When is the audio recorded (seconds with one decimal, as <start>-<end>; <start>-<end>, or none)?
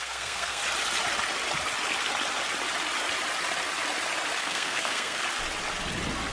0.6-4.4; 5.2-6.3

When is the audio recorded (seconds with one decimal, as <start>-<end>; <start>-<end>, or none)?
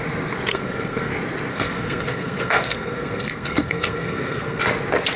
0.0-0.5; 1.1-1.5; 4.6-5.2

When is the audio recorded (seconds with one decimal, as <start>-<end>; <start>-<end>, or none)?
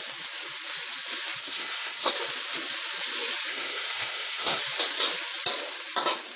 0.0-1.4; 2.1-3.5; 4.6-6.4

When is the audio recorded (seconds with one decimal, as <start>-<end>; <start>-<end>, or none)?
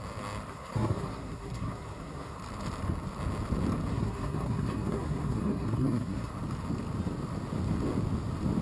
0.0-0.5; 2.4-3.9; 6.3-8.6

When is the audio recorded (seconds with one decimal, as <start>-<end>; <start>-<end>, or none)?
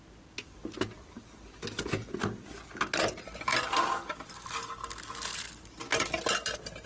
0.0-6.9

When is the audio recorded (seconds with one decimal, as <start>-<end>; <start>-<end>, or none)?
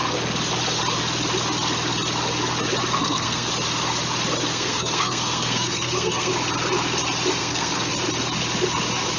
0.0-3.0; 3.5-4.5; 6.3-7.4; 7.9-9.2